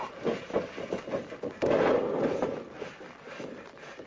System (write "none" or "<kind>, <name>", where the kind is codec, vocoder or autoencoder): none